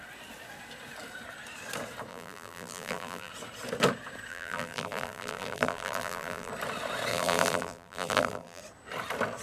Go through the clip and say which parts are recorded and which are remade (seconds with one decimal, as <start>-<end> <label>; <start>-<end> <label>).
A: 0.0-2.1 recorded; 2.1-3.3 remade; 3.3-4.3 recorded; 4.3-6.5 remade; 6.5-7.1 recorded; 7.1-8.6 remade; 8.6-9.4 recorded

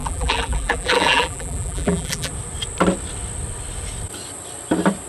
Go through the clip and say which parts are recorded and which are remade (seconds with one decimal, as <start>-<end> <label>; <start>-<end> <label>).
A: 0.0-2.3 remade; 2.3-5.1 recorded